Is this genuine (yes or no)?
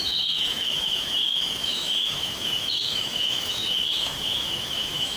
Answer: no